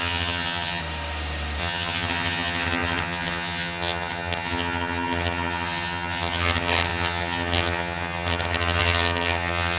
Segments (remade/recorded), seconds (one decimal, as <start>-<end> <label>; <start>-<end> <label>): 0.0-0.8 remade; 0.8-1.6 recorded; 1.6-9.8 remade